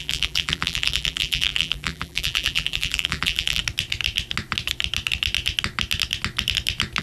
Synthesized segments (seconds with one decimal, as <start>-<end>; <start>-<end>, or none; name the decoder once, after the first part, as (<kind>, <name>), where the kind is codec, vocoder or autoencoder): 0.0-3.6 (vocoder, BigVGAN v2)